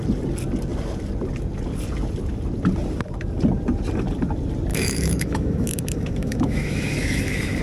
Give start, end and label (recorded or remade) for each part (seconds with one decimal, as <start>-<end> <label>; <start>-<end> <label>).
0.0-4.7 recorded; 4.7-7.6 remade